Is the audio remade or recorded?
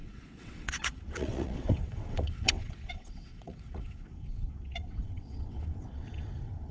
remade